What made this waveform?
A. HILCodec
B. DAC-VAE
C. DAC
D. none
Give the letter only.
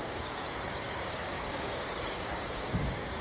C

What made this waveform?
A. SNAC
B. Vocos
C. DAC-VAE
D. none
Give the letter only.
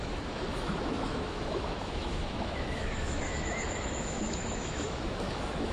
C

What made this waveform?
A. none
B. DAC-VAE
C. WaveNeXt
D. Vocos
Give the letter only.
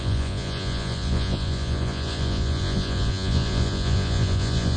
D